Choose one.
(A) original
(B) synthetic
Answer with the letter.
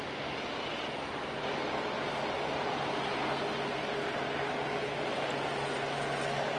A